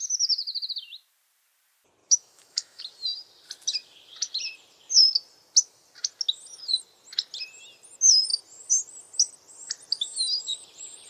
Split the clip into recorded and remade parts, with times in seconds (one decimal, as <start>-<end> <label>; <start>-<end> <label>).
0.0-2.0 recorded; 2.0-2.8 remade; 2.8-11.1 recorded